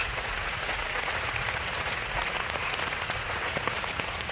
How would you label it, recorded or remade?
remade